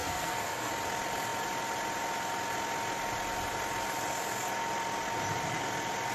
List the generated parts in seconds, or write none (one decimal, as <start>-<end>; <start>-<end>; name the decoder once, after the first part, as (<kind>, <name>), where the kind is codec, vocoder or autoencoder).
0.0-0.7 (codec, SNAC)